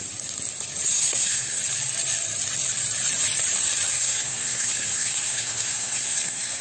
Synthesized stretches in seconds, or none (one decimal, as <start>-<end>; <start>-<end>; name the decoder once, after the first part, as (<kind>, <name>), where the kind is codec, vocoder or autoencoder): 0.9-1.6 (codec, SNAC); 3.9-6.6